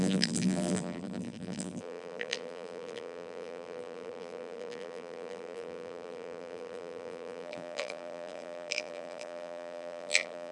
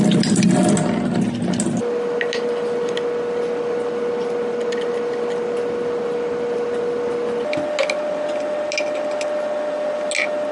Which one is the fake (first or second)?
first